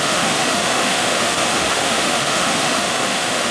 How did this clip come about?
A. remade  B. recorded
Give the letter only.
A